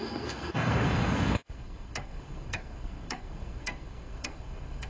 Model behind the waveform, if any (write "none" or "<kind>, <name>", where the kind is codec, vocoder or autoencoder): codec, SNAC